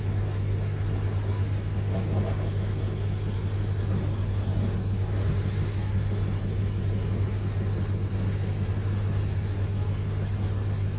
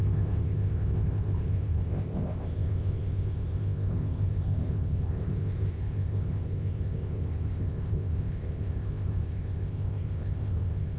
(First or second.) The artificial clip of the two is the second